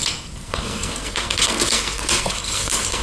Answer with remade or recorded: remade